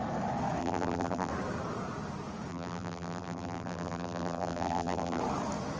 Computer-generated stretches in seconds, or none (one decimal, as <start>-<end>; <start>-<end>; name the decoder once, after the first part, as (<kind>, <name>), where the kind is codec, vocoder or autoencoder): 0.6-1.3 (vocoder, BigVGAN v2); 2.5-5.2